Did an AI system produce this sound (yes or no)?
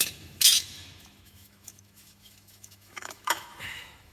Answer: yes